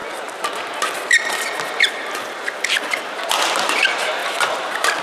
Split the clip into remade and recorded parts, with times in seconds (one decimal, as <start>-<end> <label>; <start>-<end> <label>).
0.0-5.0 recorded